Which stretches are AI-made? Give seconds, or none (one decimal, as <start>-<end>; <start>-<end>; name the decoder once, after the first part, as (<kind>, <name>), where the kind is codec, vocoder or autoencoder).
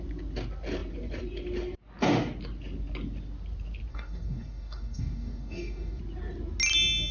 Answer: 3.9-6.0 (codec, DAC)